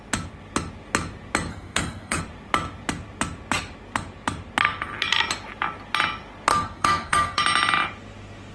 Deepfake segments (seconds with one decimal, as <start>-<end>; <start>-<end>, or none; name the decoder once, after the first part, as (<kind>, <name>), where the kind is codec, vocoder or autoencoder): 1.5-2.2 (codec, SNAC); 6.5-7.4